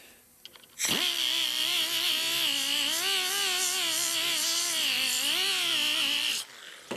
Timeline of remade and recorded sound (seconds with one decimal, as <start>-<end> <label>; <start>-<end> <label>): 0.0-7.0 recorded

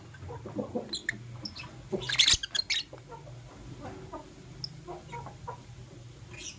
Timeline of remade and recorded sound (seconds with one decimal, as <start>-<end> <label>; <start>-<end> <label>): 0.0-6.6 recorded

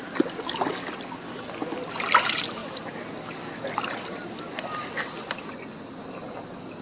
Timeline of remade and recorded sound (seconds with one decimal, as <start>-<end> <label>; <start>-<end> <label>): 0.0-6.8 recorded

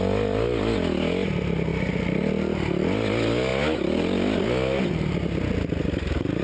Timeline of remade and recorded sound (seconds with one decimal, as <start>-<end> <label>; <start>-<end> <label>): 0.0-6.4 recorded

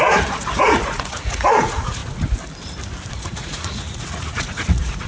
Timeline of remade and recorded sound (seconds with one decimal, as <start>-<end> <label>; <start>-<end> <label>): 0.0-2.0 remade; 2.0-3.1 recorded; 3.1-5.1 remade

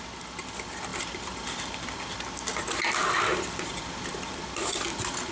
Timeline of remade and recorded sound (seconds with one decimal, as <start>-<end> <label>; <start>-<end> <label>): 0.0-0.9 recorded; 0.9-2.3 remade; 2.3-3.0 recorded; 3.0-5.3 remade

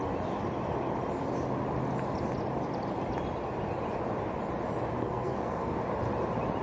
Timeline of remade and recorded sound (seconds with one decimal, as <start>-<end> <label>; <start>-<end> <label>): 0.0-5.0 recorded; 5.0-5.7 remade; 5.7-6.6 recorded